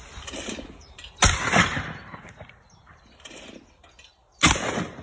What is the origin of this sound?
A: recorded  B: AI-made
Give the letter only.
A